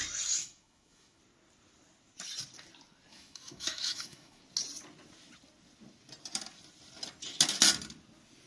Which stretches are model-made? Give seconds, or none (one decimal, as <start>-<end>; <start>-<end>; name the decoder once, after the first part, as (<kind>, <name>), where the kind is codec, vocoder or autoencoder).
0.4-1.2 (autoencoder, DAC-VAE); 3.1-4.4